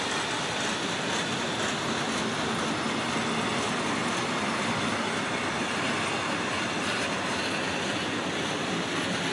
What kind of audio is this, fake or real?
real